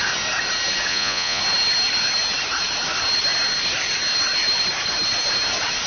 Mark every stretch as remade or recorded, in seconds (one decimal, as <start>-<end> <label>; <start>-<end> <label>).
0.0-0.9 recorded; 0.9-1.4 remade; 1.4-5.9 recorded